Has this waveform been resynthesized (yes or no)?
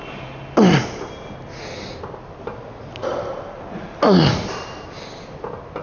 no